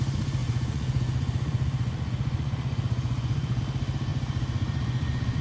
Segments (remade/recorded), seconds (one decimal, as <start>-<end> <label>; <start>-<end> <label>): 0.0-0.4 recorded; 0.4-3.6 remade; 3.6-4.1 recorded; 4.1-5.4 remade